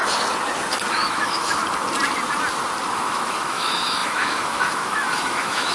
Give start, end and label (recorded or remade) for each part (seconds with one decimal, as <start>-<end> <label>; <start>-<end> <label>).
0.0-0.9 recorded; 0.9-1.6 remade; 1.6-2.9 recorded; 2.9-5.7 remade